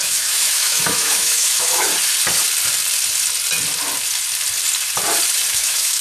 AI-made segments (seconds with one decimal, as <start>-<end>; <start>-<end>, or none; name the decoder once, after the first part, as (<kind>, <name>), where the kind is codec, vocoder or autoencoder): 0.0-1.9 (autoencoder, DAC-VAE); 5.5-6.0